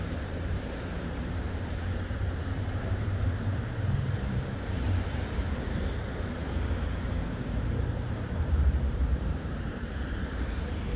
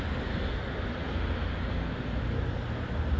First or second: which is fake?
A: first